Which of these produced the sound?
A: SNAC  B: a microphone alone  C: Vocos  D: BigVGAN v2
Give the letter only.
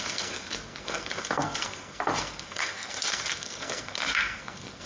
A